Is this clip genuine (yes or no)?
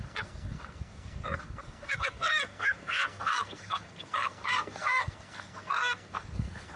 no